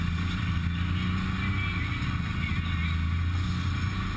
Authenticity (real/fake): real